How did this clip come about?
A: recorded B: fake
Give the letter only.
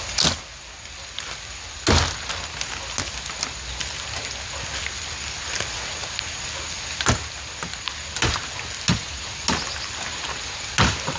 A